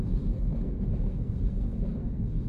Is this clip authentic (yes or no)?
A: no